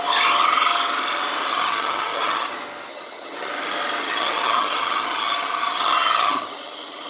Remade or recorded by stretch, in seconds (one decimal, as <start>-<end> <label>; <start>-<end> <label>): 0.0-1.5 recorded; 1.5-2.5 remade; 2.5-2.9 recorded; 2.9-3.5 remade; 3.5-4.0 recorded; 4.0-7.1 remade